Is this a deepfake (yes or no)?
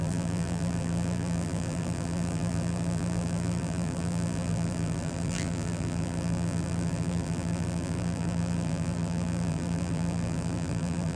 yes